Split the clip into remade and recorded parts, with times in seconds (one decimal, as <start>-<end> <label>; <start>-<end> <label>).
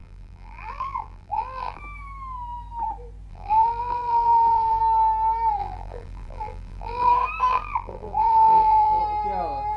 0.0-1.8 remade; 1.8-3.3 recorded; 3.3-4.8 remade; 4.8-5.6 recorded; 5.6-7.1 remade; 7.1-7.5 recorded; 7.5-9.0 remade; 9.0-9.8 recorded